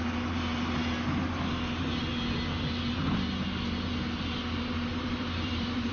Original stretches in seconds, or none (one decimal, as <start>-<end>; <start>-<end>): 0.0-4.9